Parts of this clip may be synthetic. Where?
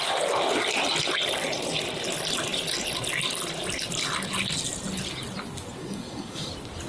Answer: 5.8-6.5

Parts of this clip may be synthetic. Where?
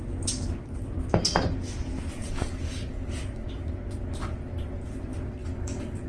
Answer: 2.2-3.5; 5.4-6.1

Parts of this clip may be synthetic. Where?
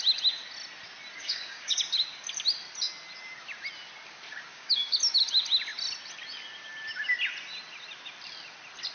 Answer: 1.2-1.8; 4.5-5.0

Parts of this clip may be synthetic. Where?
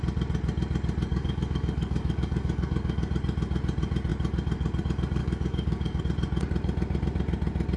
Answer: 1.1-3.1; 5.2-6.0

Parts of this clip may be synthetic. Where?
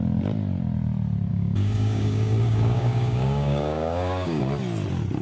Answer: 1.3-4.4